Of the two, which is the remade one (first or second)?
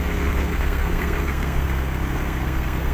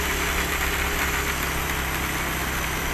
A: first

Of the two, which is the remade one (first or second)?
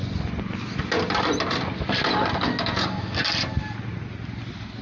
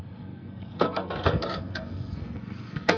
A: second